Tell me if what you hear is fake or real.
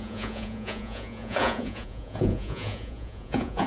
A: fake